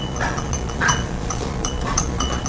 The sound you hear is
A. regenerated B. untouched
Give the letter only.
A